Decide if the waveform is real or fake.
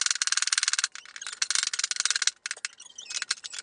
real